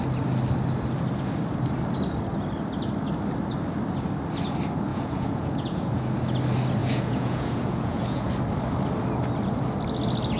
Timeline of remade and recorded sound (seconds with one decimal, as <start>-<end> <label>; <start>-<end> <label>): 0.0-4.9 recorded; 4.9-6.2 remade; 6.2-6.8 recorded; 6.8-8.3 remade; 8.3-10.4 recorded